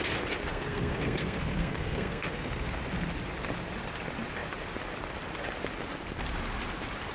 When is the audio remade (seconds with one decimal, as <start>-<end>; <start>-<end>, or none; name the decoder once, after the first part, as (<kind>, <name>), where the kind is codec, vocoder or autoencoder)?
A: 0.5-2.8 (codec, SNAC)